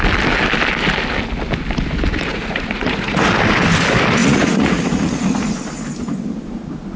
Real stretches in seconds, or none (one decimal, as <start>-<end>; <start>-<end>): 0.0-2.3; 3.2-4.2; 5.5-7.0